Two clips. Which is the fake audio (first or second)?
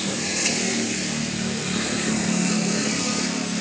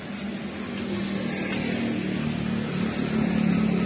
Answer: first